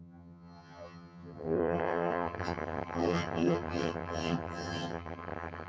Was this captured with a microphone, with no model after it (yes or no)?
no